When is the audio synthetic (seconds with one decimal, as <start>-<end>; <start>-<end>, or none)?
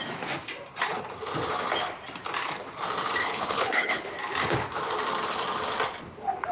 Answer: 3.2-4.1